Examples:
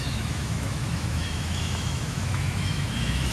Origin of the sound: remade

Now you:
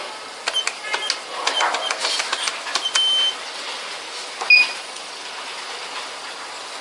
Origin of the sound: recorded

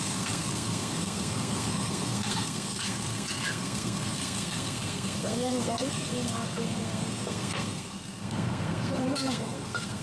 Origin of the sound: remade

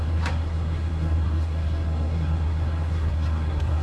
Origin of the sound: remade